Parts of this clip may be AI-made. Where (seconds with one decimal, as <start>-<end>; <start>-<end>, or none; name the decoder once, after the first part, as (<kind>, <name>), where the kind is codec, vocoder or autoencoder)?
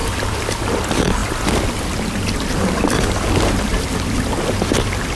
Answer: none